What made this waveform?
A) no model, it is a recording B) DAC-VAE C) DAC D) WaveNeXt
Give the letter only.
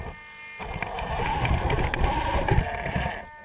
A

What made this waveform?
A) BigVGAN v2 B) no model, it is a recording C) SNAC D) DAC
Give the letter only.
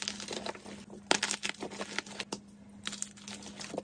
B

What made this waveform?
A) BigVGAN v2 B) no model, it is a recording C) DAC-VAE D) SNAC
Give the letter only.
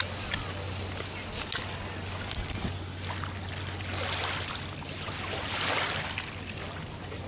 B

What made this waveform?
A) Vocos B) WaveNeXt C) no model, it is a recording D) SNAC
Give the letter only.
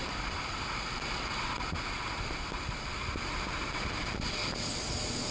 C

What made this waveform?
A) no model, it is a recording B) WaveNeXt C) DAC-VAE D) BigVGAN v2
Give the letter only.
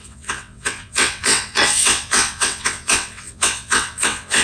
B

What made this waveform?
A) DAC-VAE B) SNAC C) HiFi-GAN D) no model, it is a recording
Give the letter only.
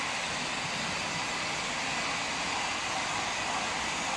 D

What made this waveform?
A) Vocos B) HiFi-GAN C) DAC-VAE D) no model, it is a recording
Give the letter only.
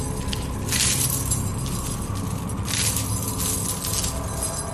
D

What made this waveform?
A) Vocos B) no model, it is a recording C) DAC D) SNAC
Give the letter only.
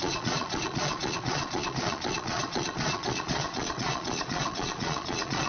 A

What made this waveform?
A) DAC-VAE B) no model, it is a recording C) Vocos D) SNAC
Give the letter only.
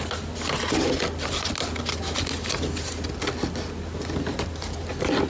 B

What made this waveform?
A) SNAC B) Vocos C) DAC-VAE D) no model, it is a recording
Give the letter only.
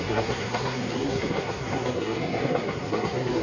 A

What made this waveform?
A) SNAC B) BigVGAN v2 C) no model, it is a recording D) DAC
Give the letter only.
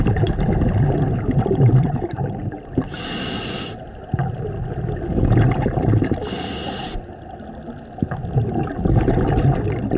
C